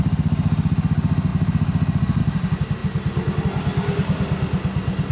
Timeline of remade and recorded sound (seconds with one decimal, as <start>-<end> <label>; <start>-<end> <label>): 0.0-2.8 recorded; 2.8-3.4 remade; 3.4-5.1 recorded